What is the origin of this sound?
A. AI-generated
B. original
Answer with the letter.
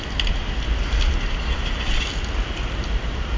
B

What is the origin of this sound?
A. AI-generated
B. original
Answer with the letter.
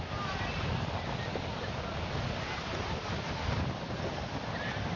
B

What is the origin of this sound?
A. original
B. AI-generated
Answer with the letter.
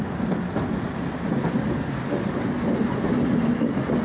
A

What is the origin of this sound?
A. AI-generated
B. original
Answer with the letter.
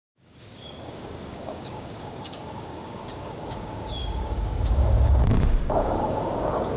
A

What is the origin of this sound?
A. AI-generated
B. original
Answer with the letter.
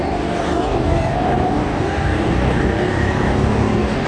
A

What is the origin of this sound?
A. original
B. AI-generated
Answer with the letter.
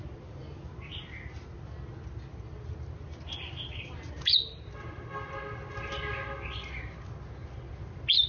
A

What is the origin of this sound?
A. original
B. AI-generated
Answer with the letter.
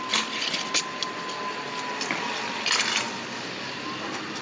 A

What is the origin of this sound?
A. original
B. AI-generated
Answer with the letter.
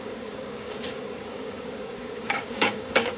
B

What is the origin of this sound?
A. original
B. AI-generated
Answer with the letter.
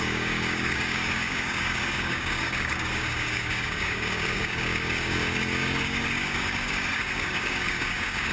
B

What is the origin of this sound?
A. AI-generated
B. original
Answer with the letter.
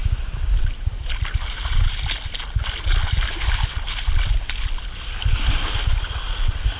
B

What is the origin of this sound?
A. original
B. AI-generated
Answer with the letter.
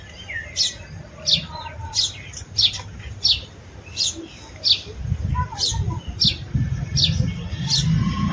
A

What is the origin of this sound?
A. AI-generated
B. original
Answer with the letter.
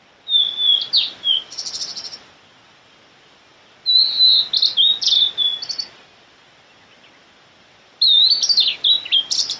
B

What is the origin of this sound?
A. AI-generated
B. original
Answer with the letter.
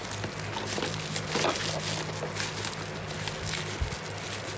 B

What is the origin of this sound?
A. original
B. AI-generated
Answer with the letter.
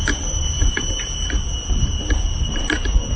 A